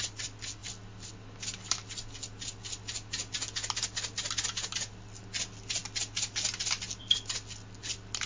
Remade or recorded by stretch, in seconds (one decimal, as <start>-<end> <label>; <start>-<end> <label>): 0.0-8.3 recorded